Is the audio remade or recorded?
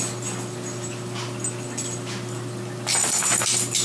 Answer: recorded